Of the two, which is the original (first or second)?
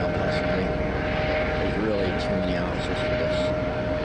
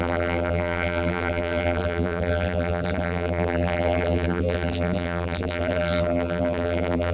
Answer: first